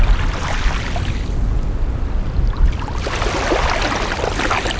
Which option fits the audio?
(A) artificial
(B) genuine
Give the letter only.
B